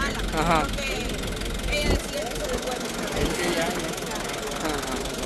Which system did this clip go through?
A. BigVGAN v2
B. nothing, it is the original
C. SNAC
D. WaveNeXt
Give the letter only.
B